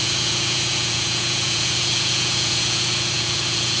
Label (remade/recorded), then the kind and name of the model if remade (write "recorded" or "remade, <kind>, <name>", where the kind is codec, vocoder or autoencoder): remade, vocoder, Vocos